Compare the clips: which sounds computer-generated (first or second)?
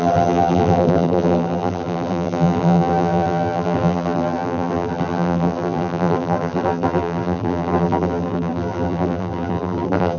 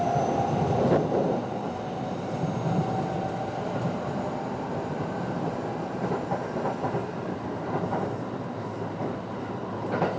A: first